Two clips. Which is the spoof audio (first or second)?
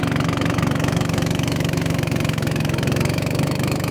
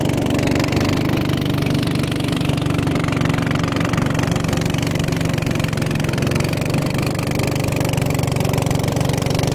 first